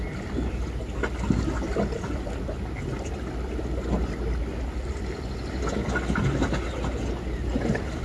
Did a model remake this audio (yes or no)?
no